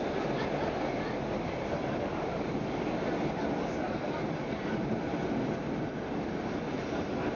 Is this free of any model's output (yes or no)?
yes